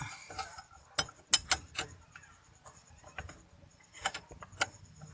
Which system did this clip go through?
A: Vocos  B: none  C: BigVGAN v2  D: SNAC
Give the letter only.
B